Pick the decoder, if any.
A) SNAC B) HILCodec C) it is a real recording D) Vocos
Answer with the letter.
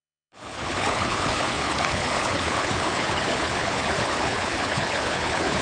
B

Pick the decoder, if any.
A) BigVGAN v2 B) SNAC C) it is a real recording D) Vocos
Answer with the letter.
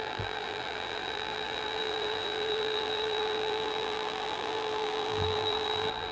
A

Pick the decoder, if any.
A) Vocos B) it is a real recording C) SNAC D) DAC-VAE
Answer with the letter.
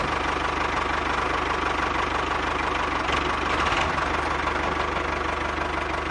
B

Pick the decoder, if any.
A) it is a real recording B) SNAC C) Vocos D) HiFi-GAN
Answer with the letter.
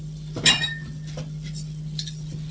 A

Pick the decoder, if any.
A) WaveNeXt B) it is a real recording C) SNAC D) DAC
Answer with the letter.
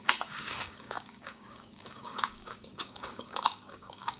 D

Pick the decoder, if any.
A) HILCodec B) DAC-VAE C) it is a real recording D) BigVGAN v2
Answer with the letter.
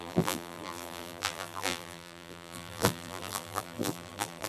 D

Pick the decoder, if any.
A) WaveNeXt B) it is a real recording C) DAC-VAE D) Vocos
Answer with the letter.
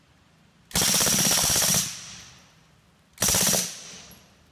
B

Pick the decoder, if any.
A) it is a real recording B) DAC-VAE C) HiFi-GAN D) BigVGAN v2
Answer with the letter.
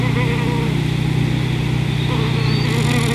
A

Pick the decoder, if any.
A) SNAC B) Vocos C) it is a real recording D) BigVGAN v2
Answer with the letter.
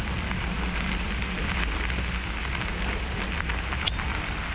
C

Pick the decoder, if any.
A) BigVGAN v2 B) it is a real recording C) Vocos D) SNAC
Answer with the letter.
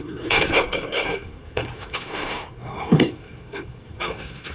D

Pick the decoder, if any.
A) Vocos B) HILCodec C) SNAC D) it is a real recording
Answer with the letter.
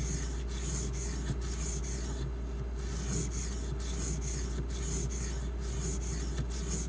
D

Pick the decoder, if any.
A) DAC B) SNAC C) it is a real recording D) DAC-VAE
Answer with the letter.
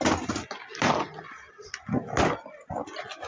C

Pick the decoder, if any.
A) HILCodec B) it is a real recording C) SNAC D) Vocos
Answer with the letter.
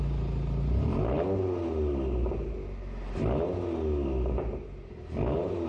B